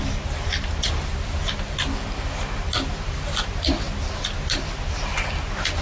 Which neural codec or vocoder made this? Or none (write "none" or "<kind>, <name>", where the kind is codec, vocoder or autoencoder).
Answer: none